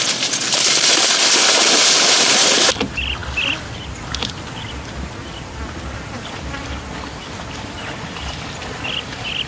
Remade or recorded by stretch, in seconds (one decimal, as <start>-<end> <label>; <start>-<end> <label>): 0.0-9.5 recorded